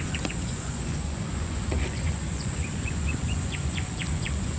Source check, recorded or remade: remade